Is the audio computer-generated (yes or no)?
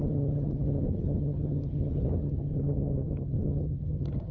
yes